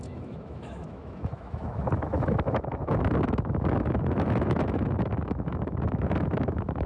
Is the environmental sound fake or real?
fake